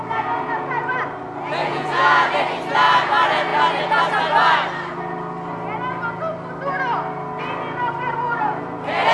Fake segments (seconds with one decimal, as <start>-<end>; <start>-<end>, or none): 1.6-2.3